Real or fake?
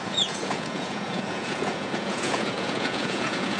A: fake